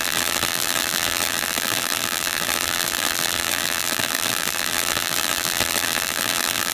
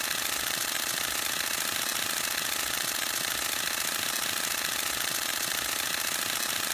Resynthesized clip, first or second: first